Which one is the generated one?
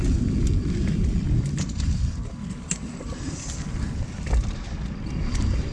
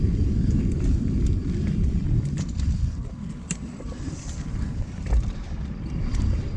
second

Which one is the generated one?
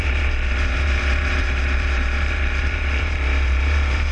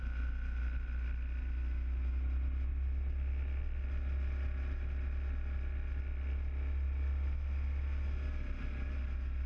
first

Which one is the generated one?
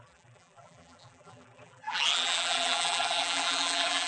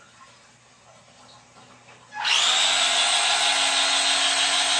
first